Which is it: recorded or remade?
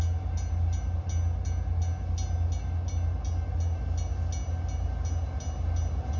recorded